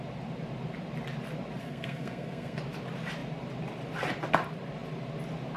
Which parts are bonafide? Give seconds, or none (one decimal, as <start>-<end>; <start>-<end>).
0.0-1.6; 2.6-5.6